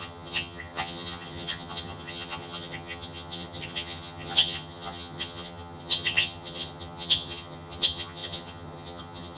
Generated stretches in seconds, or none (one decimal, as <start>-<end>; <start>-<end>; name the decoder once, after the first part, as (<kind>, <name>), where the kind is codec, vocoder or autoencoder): 0.0-9.4 (vocoder, HiFi-GAN)

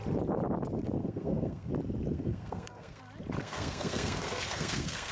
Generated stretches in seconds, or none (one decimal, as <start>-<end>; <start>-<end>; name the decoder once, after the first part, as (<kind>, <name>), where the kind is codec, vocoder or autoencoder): 1.0-1.7 (codec, SNAC); 2.1-3.0; 3.4-5.1

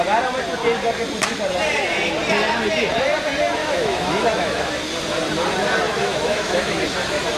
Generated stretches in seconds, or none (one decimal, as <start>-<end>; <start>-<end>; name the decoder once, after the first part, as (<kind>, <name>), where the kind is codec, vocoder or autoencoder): 3.6-4.7 (autoencoder, DAC-VAE); 6.0-6.8

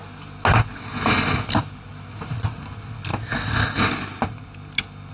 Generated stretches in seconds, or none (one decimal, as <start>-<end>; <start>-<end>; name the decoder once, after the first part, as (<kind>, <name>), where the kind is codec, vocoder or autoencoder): none